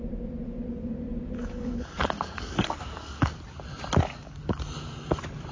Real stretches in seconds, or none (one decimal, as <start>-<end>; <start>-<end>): 0.0-1.4; 3.4-4.0; 4.6-5.5